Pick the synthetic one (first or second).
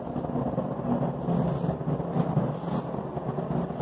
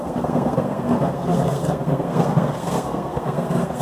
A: second